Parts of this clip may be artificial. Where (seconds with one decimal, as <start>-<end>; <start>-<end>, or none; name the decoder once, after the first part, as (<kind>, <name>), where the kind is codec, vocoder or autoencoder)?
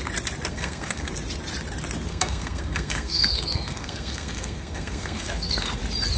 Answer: 0.5-1.1 (codec, SNAC); 2.1-5.8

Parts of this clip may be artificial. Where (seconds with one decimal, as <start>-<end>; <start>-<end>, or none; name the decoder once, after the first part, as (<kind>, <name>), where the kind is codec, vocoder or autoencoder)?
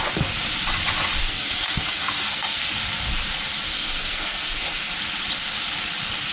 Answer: 1.2-2.7 (codec, SNAC); 3.7-4.9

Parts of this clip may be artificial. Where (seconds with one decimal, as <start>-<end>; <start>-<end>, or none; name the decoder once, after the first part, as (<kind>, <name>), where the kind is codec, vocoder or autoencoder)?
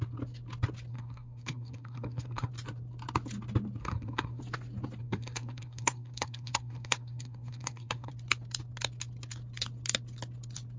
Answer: 0.9-2.5 (codec, SNAC); 3.8-4.4; 5.0-8.1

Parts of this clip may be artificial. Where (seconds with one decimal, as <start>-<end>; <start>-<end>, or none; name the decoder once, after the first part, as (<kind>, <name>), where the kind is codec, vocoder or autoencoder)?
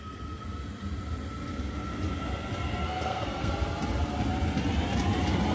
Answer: 2.8-3.5 (codec, SNAC)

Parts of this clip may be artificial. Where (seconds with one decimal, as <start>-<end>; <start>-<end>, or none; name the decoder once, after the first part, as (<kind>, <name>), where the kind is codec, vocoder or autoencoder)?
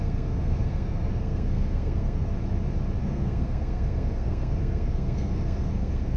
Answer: 0.0-2.3 (codec, SNAC); 3.0-6.2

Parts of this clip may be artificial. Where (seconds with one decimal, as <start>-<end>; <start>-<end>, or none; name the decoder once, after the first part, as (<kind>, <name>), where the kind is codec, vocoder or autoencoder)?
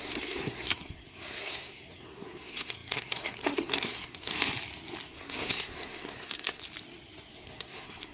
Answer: 0.0-4.3 (codec, SNAC); 5.1-6.6; 7.3-8.1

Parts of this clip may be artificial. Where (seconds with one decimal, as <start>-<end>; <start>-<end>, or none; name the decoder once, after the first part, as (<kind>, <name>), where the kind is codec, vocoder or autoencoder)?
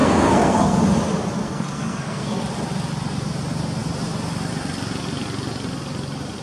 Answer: 0.0-0.8 (codec, SNAC); 1.4-2.4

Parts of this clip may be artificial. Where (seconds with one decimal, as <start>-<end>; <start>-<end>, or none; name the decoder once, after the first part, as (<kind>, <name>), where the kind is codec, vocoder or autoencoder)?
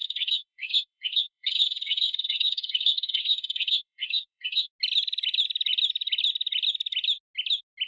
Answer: 0.0-4.7 (codec, SNAC)